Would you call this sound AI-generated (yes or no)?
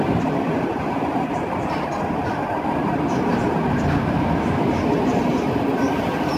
yes